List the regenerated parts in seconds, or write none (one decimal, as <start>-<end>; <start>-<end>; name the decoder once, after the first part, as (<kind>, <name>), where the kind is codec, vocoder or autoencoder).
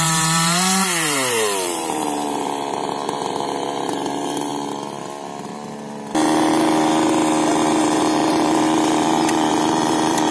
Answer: 0.0-4.5 (vocoder, BigVGAN v2); 7.8-10.3